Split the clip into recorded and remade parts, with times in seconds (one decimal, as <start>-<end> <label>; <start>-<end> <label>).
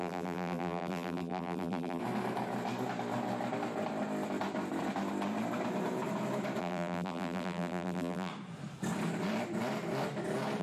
0.0-2.0 remade; 2.0-6.6 recorded; 6.6-8.3 remade; 8.3-10.6 recorded